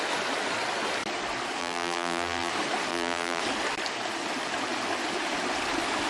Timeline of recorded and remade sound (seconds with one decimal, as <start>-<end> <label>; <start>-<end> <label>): 0.0-1.6 recorded; 1.6-2.5 remade; 2.5-2.9 recorded; 2.9-3.4 remade; 3.4-6.1 recorded